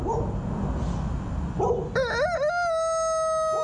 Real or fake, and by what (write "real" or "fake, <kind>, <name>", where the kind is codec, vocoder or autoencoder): real